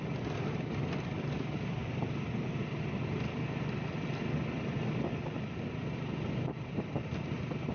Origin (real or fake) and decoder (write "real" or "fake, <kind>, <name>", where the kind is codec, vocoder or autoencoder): real